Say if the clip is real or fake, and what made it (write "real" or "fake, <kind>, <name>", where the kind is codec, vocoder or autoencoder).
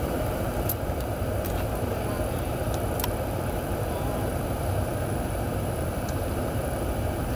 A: fake, vocoder, BigVGAN v2